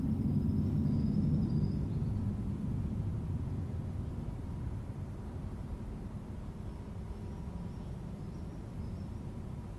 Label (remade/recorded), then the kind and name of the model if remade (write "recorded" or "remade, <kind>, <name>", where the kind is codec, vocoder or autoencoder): recorded